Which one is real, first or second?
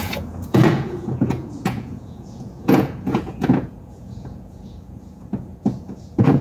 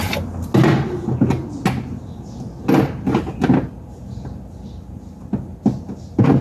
second